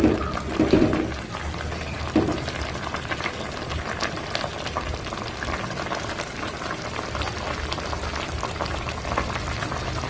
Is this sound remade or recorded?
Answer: recorded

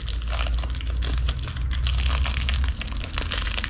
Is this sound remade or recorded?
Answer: recorded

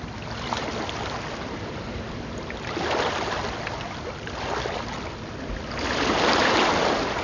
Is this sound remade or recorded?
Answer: recorded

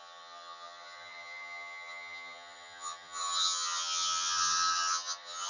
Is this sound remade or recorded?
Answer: remade